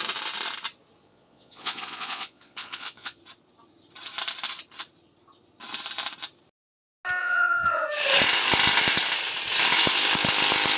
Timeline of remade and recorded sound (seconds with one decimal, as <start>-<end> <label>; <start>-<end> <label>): 0.0-1.0 recorded; 1.0-3.2 remade; 3.2-7.2 recorded; 7.2-7.8 remade; 7.8-10.8 recorded